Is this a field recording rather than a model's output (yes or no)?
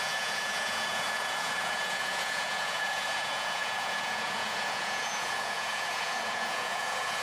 no